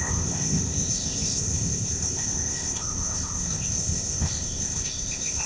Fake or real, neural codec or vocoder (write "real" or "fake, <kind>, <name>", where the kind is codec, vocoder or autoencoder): fake, codec, ZipCodec